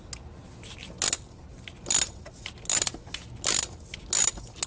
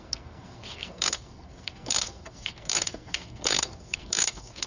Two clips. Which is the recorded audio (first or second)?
first